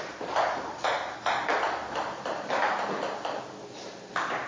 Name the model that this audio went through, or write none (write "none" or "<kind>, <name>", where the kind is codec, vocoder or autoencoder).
none